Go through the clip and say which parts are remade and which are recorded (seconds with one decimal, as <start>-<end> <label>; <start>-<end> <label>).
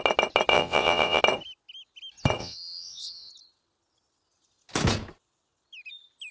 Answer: 0.0-0.5 recorded; 0.5-1.2 remade; 1.2-2.4 recorded; 2.4-3.3 remade; 3.3-6.3 recorded